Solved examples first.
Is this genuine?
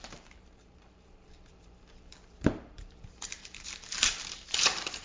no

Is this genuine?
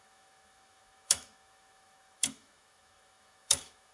no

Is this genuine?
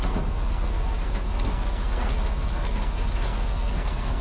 no